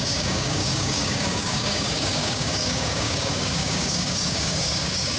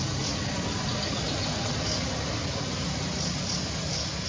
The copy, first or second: first